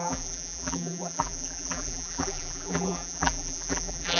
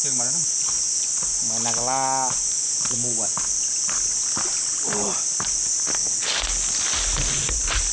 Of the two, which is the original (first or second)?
second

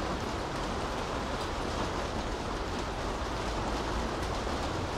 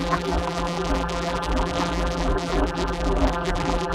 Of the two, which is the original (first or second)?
first